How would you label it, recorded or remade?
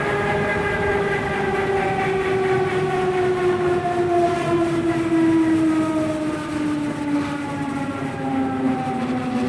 recorded